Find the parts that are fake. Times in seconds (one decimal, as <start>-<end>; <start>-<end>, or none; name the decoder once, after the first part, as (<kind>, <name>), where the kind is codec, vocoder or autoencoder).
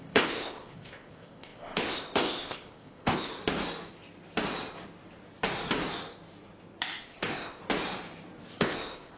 0.0-3.4 (codec, ZipCodec); 7.0-7.6; 8.6-9.2